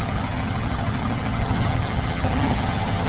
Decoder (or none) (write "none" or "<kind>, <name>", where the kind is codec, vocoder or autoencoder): vocoder, HiFi-GAN